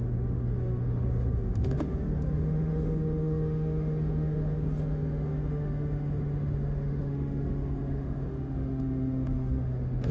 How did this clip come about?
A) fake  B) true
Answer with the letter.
A